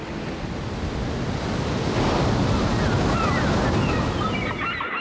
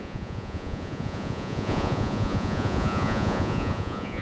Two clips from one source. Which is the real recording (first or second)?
first